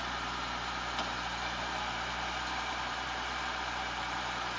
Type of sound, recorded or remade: remade